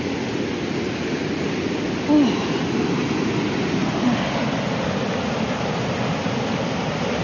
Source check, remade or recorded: recorded